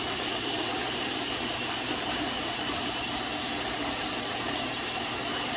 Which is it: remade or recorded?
remade